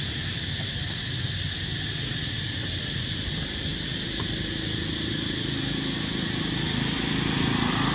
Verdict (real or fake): real